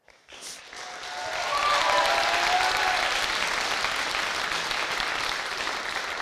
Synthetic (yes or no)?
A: no